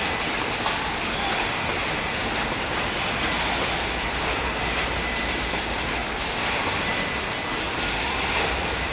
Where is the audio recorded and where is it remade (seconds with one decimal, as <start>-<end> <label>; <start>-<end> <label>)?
0.0-2.2 recorded; 2.2-2.8 remade; 2.8-6.0 recorded; 6.0-6.9 remade; 6.9-8.9 recorded